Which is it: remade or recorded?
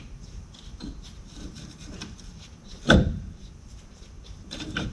remade